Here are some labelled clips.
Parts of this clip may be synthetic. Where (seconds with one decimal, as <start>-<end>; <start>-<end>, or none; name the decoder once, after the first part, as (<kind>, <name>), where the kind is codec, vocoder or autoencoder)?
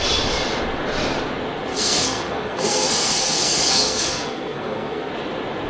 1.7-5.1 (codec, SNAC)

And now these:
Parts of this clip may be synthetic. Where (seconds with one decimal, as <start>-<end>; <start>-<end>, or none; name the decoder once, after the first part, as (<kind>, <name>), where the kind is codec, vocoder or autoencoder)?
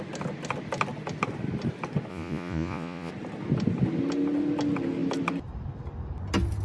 2.1-3.1 (vocoder, Vocos)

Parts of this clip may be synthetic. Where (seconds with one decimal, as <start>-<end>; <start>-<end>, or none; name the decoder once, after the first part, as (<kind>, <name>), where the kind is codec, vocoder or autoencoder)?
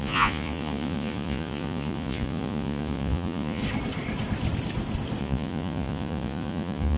0.0-3.6 (vocoder, Vocos); 5.2-7.0